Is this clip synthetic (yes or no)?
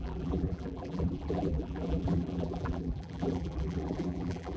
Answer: yes